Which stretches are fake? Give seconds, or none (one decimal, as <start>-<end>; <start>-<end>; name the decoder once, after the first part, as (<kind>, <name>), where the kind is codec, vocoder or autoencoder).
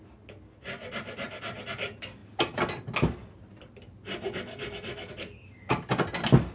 none